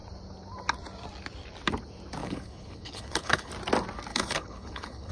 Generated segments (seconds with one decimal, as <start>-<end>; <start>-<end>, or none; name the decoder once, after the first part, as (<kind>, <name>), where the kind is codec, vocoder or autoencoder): 2.2-3.5 (codec, HILCodec); 4.1-5.1